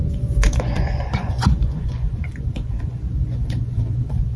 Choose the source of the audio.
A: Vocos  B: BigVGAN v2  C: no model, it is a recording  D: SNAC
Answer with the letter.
A